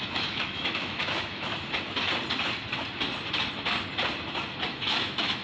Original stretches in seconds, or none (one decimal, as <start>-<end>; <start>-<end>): 1.5-4.7